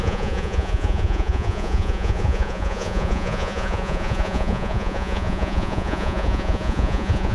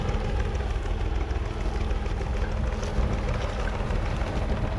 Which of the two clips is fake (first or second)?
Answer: first